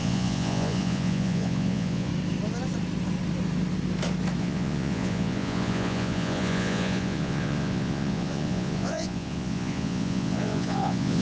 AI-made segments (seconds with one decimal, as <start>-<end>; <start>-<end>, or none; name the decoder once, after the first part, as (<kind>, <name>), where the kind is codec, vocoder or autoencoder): 0.0-2.1 (vocoder, Vocos); 4.4-11.2